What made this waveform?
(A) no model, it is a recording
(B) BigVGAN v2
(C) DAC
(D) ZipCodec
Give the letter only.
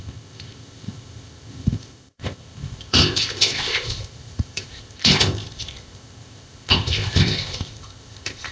D